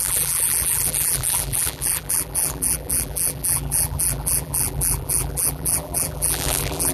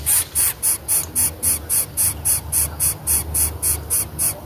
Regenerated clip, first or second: first